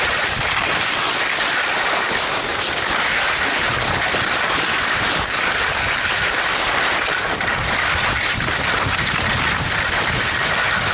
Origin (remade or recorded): recorded